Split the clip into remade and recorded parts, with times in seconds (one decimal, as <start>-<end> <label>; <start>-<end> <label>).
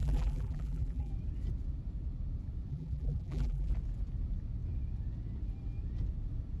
0.0-1.1 remade; 1.1-2.7 recorded; 2.7-3.7 remade; 3.7-6.6 recorded